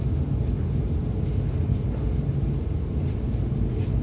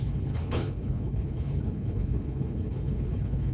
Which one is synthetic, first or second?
second